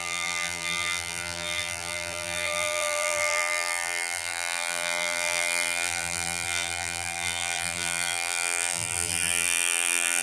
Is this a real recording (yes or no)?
no